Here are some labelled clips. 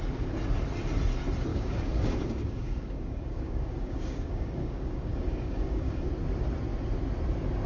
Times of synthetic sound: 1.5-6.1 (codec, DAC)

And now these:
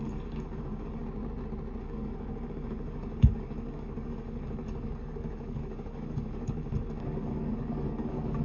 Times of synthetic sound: 0.0-1.0 (codec, DAC); 1.8-8.4

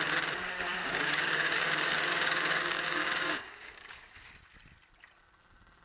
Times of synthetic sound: 0.8-4.3 (codec, DAC)

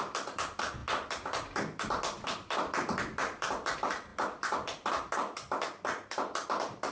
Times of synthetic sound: none